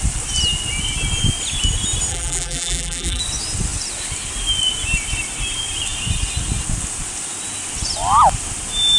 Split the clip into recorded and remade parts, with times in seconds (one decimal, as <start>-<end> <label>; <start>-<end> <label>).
0.0-2.1 recorded; 2.1-3.2 remade; 3.2-9.0 recorded